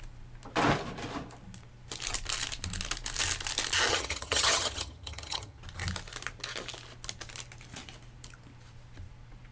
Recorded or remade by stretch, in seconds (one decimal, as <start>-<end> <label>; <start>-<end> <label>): 0.0-3.9 recorded; 3.9-5.6 remade; 5.6-9.5 recorded